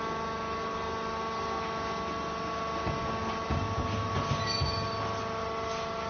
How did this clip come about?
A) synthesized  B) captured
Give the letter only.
B